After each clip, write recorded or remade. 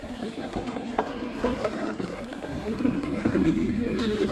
remade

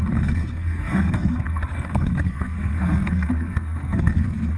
remade